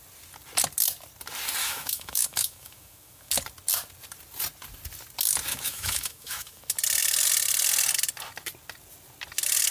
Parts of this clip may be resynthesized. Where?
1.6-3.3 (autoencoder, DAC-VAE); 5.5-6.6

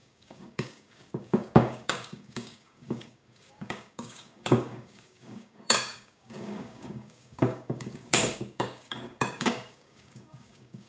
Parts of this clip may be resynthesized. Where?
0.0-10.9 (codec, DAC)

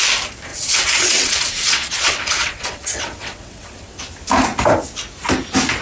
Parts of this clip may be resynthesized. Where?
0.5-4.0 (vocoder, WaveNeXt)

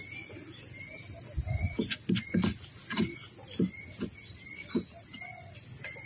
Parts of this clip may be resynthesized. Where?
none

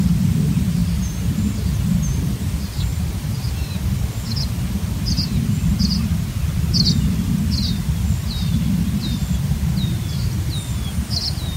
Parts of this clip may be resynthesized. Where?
2.9-3.5 (vocoder, BigVGAN v2)

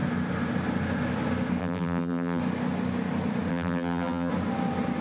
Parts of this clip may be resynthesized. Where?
1.6-2.4 (vocoder, BigVGAN v2); 3.5-4.3

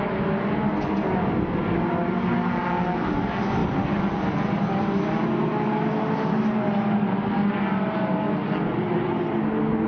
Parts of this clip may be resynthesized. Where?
none

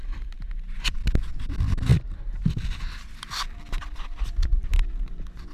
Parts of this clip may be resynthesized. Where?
none